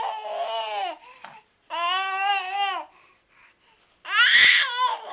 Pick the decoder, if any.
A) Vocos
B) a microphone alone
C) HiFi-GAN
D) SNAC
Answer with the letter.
B